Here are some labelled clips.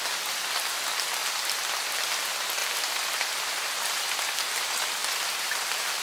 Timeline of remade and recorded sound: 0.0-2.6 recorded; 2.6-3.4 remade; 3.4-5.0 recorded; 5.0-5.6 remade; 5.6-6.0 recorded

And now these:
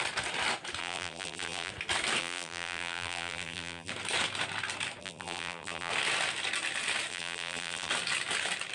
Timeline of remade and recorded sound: 0.0-0.8 recorded; 0.8-1.7 remade; 1.7-2.2 recorded; 2.2-3.9 remade; 3.9-5.0 recorded; 5.0-5.9 remade; 5.9-7.1 recorded; 7.1-7.9 remade; 7.9-8.7 recorded

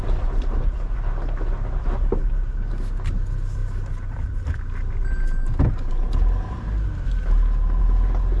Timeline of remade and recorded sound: 0.0-8.4 recorded

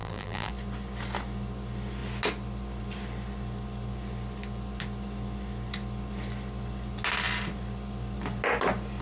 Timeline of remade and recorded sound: 0.0-0.5 remade; 0.5-9.0 recorded